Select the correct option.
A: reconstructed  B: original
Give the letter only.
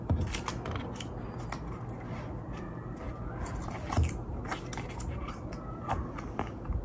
B